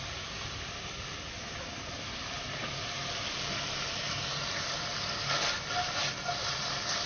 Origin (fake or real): real